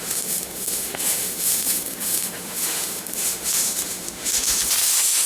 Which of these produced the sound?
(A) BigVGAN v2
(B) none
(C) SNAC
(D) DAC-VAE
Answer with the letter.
D